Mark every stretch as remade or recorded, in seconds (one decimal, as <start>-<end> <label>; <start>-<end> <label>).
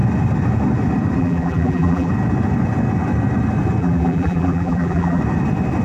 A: 0.0-1.2 recorded; 1.2-2.1 remade; 2.1-3.8 recorded; 3.8-5.2 remade; 5.2-5.8 recorded